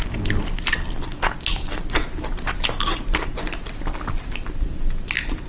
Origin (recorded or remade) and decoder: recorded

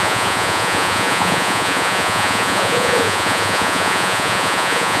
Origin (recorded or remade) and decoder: remade, vocoder, Vocos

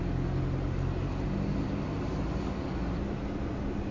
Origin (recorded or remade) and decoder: recorded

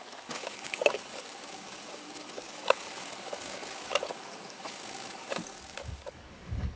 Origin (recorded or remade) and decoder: remade, codec, DAC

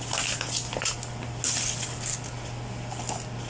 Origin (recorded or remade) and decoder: recorded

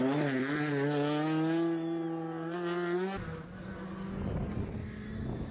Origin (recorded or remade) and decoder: recorded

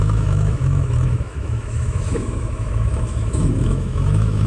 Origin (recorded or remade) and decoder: remade, autoencoder, DAC-VAE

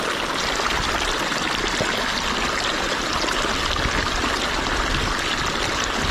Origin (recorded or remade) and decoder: recorded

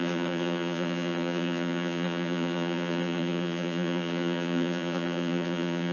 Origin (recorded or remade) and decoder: remade, vocoder, Vocos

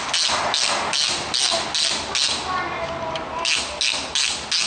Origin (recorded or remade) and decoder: recorded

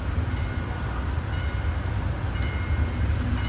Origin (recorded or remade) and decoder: recorded